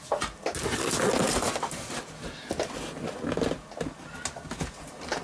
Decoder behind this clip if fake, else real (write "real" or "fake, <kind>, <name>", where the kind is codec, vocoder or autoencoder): real